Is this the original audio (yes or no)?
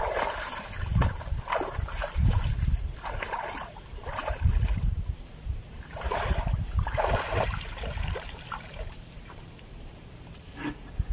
no